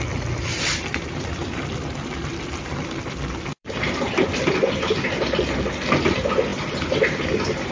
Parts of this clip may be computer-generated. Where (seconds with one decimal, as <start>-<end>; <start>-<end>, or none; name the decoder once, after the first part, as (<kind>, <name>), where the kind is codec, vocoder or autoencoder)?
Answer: 0.0-7.7 (vocoder, BigVGAN v2)